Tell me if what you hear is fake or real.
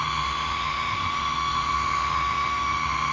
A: fake